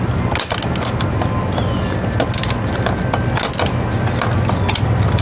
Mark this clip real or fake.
real